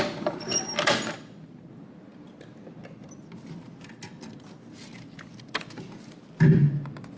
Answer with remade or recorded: recorded